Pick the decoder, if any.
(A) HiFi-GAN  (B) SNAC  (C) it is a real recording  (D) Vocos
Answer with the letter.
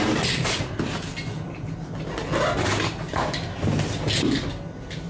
C